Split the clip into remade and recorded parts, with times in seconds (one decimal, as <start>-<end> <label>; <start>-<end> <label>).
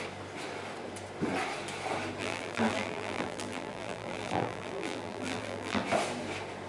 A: 0.0-2.2 recorded; 2.2-5.8 remade; 5.8-6.7 recorded